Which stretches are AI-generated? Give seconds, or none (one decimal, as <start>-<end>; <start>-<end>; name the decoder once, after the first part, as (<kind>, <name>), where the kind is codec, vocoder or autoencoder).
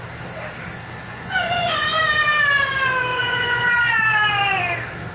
1.1-2.0 (vocoder, Vocos); 3.1-3.9